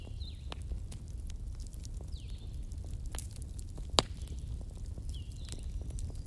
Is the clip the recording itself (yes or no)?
yes